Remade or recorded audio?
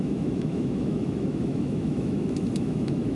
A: remade